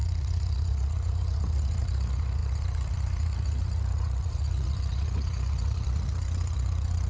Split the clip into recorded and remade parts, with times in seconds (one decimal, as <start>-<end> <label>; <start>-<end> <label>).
0.0-7.1 remade